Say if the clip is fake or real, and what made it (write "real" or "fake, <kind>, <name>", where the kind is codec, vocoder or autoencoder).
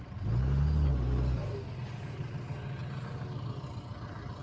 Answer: real